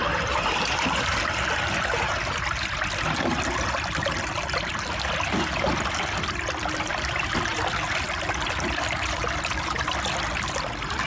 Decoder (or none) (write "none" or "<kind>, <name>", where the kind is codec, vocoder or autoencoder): none